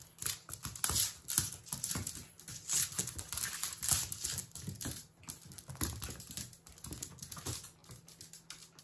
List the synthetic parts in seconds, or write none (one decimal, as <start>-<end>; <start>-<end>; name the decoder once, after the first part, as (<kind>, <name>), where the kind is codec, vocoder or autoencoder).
none